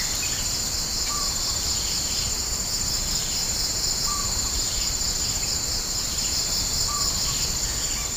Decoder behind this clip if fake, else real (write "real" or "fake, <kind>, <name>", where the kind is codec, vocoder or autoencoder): real